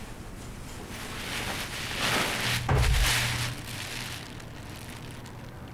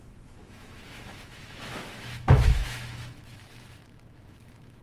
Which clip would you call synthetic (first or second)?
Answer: second